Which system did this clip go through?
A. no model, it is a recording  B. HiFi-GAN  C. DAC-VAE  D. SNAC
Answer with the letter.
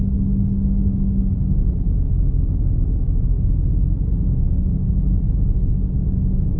A